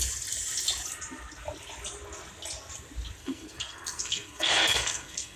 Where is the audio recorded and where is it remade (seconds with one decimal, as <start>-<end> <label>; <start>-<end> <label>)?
0.0-3.2 recorded; 3.2-5.4 remade